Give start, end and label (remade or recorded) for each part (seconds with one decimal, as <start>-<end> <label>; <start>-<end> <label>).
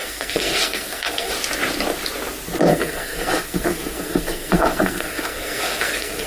0.0-1.3 remade; 1.3-2.7 recorded; 2.7-6.3 remade